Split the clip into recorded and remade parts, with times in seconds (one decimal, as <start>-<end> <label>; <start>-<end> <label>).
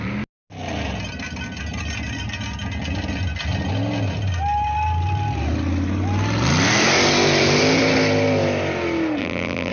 0.0-9.2 recorded; 9.2-9.7 remade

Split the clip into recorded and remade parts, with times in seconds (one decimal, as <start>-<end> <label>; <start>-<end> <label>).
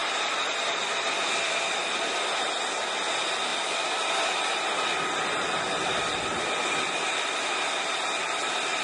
0.0-8.8 recorded